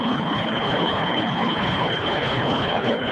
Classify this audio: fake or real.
fake